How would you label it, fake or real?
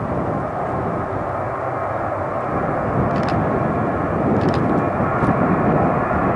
real